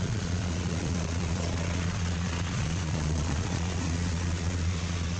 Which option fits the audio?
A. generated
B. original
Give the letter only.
A